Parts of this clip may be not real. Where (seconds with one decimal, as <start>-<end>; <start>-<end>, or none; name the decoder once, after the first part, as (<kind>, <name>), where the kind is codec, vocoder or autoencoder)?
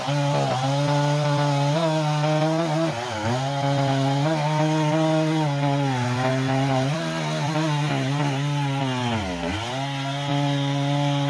6.3-7.5 (vocoder, BigVGAN v2); 10.3-11.3